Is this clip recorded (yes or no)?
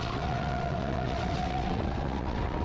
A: no